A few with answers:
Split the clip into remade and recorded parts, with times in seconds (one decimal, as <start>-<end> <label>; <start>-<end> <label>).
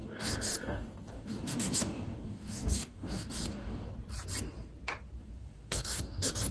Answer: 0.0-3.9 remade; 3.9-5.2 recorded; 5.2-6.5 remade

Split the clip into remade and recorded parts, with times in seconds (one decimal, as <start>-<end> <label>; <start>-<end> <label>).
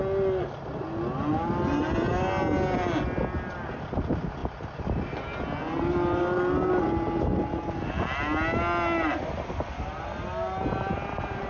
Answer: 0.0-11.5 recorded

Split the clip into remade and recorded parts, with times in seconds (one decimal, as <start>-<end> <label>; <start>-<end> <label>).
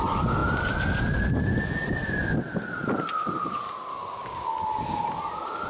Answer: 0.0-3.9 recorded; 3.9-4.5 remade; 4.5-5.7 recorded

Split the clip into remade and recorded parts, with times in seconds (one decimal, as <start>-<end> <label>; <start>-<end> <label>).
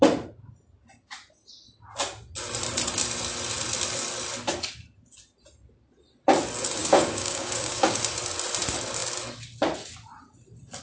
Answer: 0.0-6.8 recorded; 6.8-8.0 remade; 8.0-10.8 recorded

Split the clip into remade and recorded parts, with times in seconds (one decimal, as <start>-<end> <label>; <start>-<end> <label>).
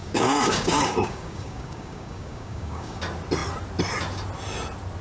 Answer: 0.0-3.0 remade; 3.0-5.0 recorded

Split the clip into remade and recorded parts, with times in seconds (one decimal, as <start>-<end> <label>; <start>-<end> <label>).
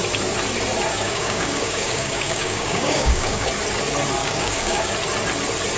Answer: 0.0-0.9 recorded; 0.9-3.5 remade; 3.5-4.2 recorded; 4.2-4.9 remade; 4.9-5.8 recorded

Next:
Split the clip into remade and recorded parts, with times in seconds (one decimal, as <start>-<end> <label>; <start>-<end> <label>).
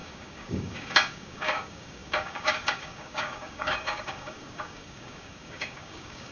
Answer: 0.0-6.3 remade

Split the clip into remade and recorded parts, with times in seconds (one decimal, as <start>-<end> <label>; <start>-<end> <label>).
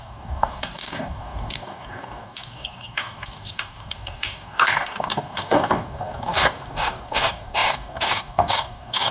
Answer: 0.0-9.1 remade